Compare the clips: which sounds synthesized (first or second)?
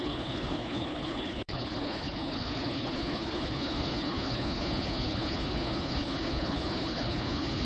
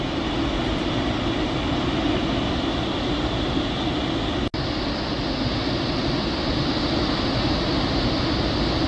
first